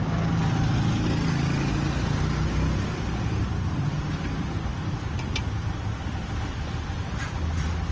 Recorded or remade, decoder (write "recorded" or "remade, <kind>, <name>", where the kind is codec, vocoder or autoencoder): recorded